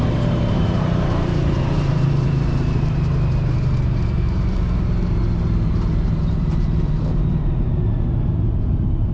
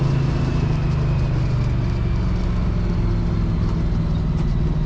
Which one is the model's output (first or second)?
first